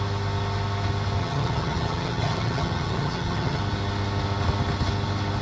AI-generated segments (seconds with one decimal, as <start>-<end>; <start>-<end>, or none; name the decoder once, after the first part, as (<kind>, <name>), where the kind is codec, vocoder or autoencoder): 1.2-3.6 (vocoder, HiFi-GAN)